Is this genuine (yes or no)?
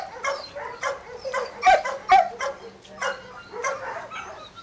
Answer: yes